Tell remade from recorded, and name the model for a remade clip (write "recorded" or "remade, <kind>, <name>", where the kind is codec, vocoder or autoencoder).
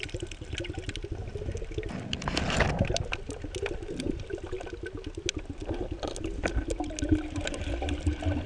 recorded